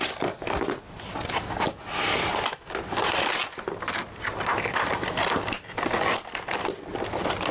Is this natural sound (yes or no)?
yes